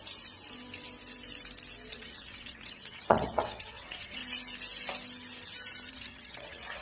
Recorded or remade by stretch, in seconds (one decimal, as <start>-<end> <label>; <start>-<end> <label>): 0.0-1.9 recorded; 1.9-4.2 remade; 4.2-5.9 recorded; 5.9-6.8 remade